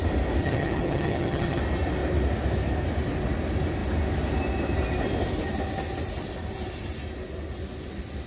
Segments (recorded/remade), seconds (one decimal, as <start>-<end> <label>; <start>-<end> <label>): 0.0-0.4 recorded; 0.4-1.6 remade; 1.6-8.3 recorded